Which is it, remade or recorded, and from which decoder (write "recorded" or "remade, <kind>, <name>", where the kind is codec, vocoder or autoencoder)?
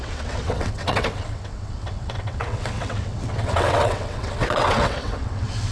remade, vocoder, WaveNeXt